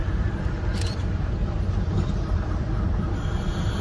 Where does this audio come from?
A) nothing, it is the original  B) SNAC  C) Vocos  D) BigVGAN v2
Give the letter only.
D